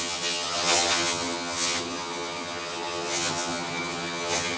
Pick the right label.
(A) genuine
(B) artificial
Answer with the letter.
B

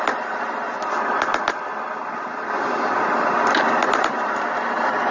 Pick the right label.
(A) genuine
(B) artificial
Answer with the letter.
A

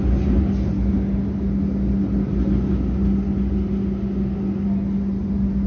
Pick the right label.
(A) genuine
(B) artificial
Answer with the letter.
A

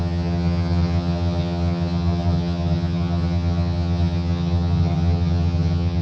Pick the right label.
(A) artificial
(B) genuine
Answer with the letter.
A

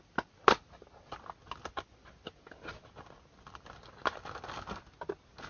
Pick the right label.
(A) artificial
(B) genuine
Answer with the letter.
B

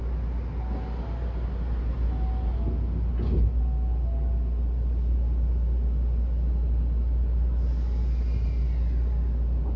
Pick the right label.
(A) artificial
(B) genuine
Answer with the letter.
B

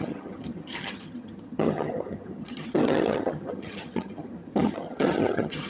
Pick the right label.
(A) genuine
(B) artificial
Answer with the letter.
B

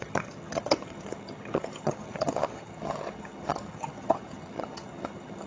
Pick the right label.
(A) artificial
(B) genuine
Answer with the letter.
A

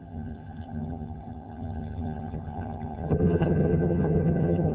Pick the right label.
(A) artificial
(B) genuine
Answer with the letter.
A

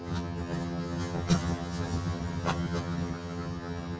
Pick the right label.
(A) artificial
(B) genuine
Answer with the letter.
A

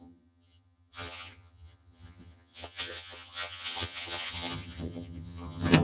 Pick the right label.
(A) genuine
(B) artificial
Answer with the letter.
B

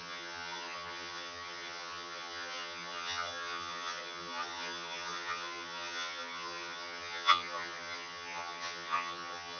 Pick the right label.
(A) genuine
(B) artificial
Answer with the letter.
B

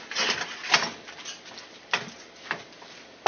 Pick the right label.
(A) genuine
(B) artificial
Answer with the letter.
A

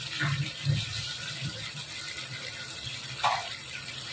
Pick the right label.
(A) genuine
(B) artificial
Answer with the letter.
A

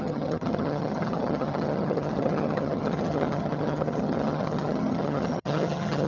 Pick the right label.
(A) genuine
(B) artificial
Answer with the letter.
B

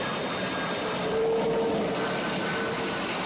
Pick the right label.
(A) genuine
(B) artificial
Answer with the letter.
A